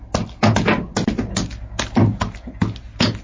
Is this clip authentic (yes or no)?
yes